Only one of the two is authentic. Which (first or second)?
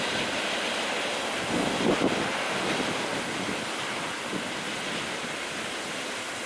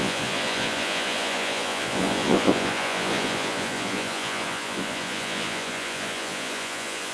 first